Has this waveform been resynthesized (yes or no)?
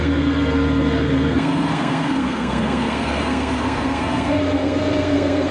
yes